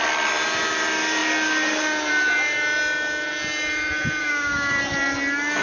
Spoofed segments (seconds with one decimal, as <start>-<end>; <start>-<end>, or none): 4.2-4.8